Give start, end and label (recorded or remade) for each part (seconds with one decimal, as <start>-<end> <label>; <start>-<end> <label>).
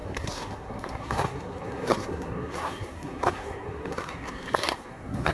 0.0-5.3 remade